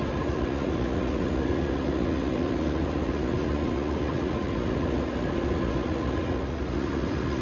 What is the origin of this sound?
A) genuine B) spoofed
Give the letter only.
B